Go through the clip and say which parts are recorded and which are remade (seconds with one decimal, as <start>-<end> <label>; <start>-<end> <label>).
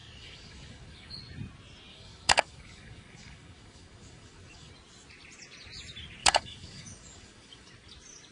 0.0-1.2 remade; 1.2-1.9 recorded; 1.9-4.7 remade; 4.7-6.2 recorded; 6.2-7.7 remade; 7.7-8.3 recorded